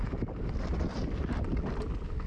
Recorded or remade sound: recorded